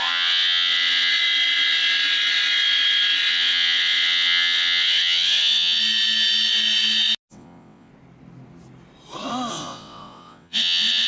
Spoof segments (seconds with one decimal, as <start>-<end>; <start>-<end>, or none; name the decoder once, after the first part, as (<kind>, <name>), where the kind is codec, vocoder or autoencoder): 0.0-1.1 (vocoder, WaveNeXt); 3.3-5.8; 7.3-7.9; 9.5-11.1